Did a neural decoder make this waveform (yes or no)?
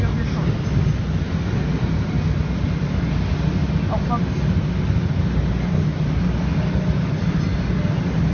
no